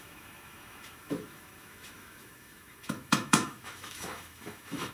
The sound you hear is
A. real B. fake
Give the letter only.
B